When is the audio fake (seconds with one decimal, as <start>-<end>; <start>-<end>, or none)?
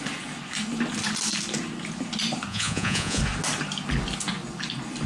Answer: 2.5-3.2